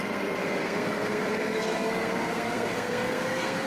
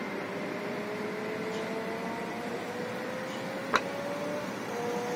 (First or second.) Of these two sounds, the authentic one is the second